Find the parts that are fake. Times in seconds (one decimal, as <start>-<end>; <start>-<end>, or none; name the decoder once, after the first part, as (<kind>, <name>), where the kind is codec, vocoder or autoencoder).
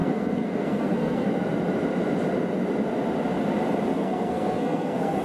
0.0-1.3 (codec, SNAC); 3.9-5.2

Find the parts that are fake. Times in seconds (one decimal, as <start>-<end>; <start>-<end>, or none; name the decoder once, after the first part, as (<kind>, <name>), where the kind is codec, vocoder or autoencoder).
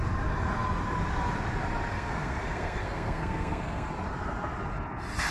1.9-3.9 (codec, SNAC)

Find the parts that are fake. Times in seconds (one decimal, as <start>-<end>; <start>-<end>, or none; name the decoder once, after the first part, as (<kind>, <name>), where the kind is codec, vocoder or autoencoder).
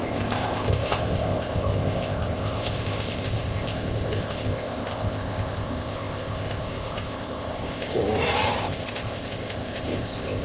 0.0-8.0 (codec, ZipCodec); 8.6-10.4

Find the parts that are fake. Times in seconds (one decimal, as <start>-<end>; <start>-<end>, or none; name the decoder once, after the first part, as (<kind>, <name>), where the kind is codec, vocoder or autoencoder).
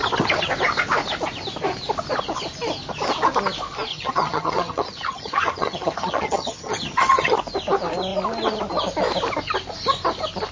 3.9-7.4 (vocoder, HiFi-GAN)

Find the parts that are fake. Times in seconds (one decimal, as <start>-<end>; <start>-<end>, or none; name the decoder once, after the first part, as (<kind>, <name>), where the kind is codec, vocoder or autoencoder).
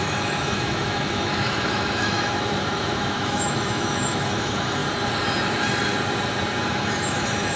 0.0-4.8 (autoencoder, DAC-VAE); 6.6-7.6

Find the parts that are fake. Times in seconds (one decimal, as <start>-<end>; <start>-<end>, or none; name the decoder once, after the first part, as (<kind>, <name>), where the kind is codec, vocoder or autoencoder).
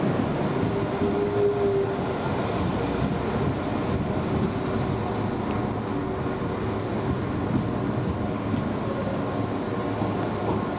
none